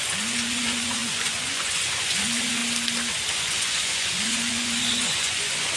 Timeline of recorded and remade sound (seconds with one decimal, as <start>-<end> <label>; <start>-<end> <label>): 0.0-2.6 remade; 2.6-3.3 recorded; 3.3-5.8 remade